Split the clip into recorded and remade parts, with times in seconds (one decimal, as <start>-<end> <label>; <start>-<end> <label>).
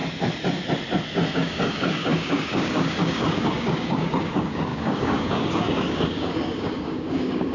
0.0-1.3 recorded; 1.3-7.5 remade